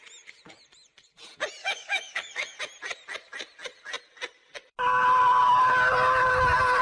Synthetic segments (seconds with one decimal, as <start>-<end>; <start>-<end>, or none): 1.6-2.6